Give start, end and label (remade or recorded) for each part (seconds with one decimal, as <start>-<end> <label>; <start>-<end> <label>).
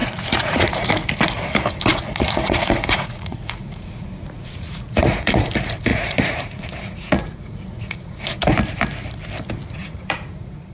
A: 0.0-0.9 remade; 0.9-1.9 recorded; 1.9-5.5 remade; 5.5-5.9 recorded; 5.9-8.4 remade; 8.4-9.8 recorded; 9.8-10.7 remade